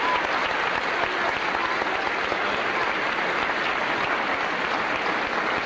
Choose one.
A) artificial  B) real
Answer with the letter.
B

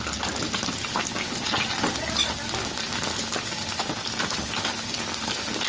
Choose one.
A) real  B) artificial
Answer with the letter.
A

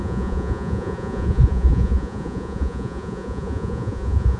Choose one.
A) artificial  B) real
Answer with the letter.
A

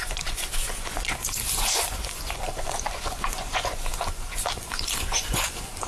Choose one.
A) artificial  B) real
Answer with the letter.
A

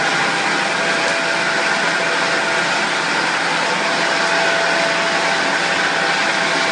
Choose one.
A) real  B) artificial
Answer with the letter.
A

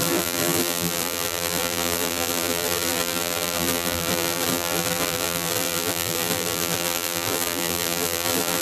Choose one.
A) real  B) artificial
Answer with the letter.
B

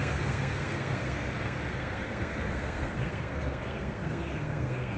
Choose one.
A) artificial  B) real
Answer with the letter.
A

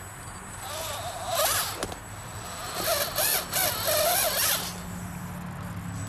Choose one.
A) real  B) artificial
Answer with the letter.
A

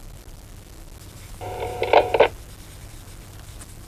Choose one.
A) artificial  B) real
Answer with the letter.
B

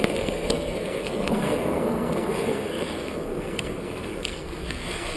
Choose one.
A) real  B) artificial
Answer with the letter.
B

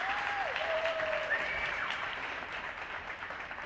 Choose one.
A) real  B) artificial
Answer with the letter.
B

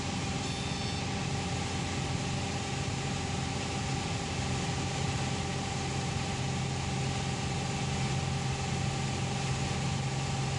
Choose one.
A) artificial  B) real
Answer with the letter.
B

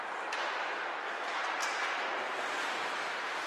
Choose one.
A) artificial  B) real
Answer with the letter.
B